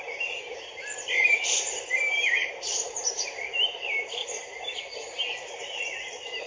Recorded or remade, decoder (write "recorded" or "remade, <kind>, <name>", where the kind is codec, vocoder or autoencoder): remade, vocoder, BigVGAN v2